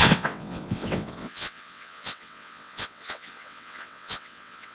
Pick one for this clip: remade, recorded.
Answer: remade